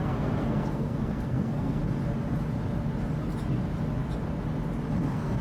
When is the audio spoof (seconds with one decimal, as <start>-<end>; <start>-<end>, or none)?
0.0-1.8; 5.0-5.4